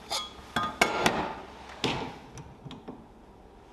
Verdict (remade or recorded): recorded